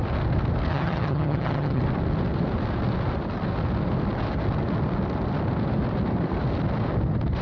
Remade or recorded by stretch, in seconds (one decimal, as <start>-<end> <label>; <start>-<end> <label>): 0.0-0.7 recorded; 0.7-1.8 remade; 1.8-7.4 recorded